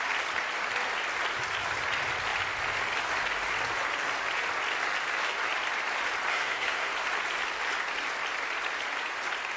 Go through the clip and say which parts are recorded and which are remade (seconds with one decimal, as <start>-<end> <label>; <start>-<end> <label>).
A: 0.0-6.3 recorded; 6.3-6.9 remade; 6.9-9.6 recorded